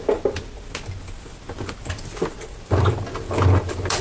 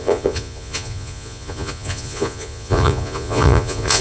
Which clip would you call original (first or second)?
first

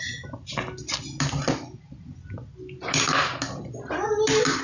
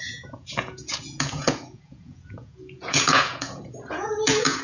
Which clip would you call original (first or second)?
first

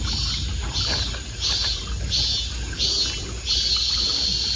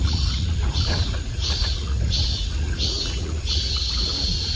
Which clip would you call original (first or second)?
first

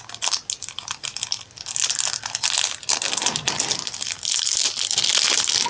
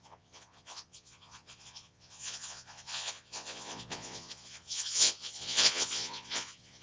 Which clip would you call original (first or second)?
first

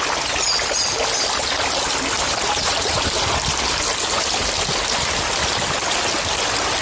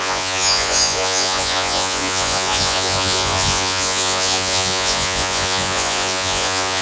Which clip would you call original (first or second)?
first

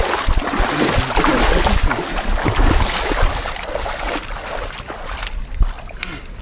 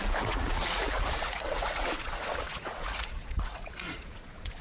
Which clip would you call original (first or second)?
first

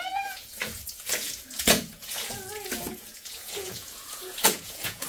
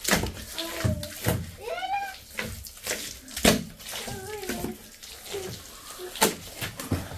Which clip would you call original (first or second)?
second